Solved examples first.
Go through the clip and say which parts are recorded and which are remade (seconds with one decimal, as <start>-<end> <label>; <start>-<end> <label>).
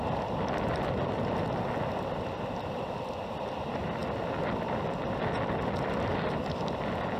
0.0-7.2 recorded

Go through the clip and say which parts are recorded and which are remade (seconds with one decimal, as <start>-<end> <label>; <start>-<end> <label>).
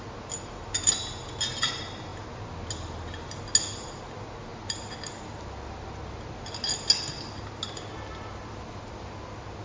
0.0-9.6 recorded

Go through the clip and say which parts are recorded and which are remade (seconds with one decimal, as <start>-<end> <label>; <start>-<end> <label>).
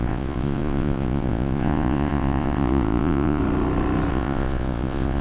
0.0-3.4 remade; 3.4-4.1 recorded; 4.1-5.2 remade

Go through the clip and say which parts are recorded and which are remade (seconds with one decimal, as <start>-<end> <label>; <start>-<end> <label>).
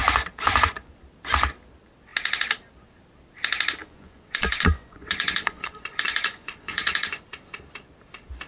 0.0-0.9 remade; 0.9-3.8 recorded; 3.8-7.2 remade; 7.2-8.5 recorded